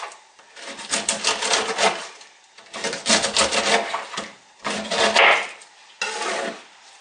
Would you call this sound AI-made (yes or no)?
no